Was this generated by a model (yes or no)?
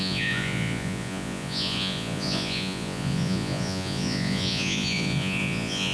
yes